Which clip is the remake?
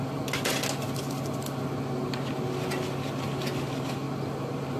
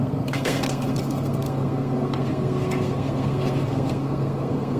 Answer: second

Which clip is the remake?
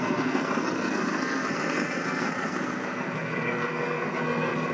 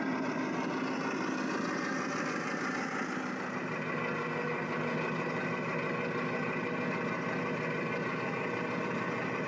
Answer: first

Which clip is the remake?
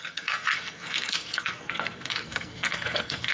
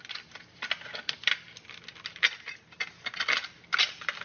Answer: first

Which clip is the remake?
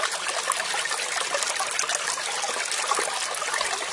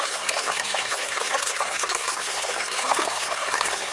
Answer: second